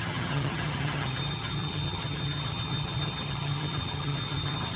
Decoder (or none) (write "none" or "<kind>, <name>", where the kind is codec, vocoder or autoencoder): vocoder, HiFi-GAN